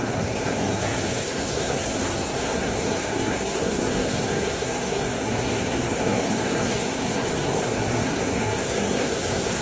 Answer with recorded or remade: remade